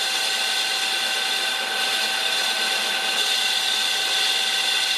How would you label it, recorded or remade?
recorded